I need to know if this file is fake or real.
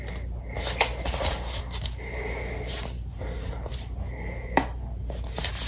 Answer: real